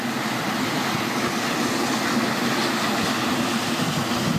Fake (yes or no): no